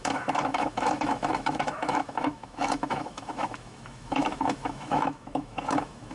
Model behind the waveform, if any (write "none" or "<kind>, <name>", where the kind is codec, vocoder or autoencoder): autoencoder, DAC-VAE